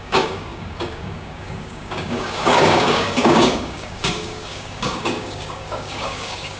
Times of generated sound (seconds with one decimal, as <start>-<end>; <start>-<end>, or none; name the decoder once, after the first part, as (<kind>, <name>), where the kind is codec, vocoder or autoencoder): 0.0-6.6 (codec, DAC)

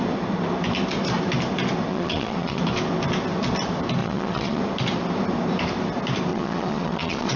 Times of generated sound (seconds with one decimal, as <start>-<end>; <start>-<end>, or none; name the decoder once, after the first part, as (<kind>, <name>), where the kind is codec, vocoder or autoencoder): 1.9-2.6 (vocoder, Vocos); 4.0-4.6; 6.3-7.4

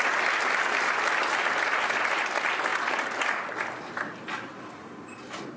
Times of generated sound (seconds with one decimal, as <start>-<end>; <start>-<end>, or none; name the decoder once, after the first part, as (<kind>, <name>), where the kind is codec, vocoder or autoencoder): none

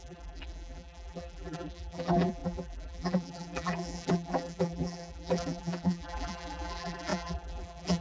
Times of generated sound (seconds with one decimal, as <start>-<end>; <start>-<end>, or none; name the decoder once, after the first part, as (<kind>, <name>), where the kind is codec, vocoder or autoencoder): 0.0-8.0 (vocoder, BigVGAN v2)